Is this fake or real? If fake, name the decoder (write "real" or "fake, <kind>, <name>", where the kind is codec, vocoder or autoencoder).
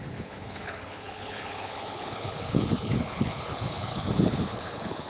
fake, codec, HILCodec